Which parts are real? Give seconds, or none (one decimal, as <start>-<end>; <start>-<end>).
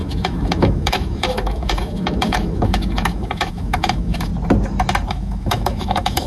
4.3-5.1